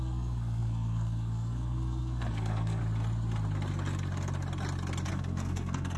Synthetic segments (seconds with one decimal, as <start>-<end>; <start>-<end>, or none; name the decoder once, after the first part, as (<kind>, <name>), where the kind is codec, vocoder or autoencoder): 0.0-2.8 (codec, SNAC); 5.1-6.0